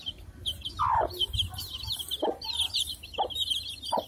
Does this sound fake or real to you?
real